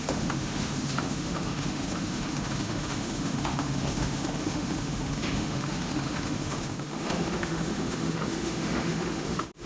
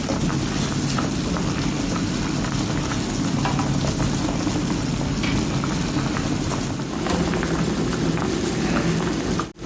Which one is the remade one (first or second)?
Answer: first